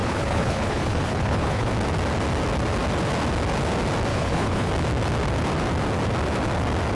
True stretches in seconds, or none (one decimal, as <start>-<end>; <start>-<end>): 1.7-4.1; 4.7-6.9